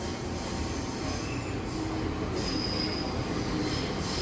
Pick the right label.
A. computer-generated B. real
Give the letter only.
B